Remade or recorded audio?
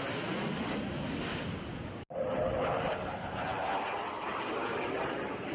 recorded